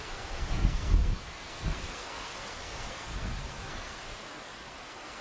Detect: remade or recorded remade